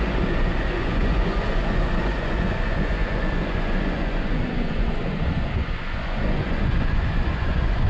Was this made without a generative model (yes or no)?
no